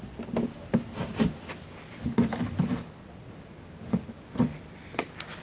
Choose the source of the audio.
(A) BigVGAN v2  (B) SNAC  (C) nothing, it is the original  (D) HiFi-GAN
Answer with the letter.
C